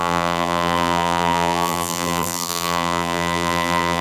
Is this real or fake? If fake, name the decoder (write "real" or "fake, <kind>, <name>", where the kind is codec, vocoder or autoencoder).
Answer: fake, vocoder, BigVGAN v2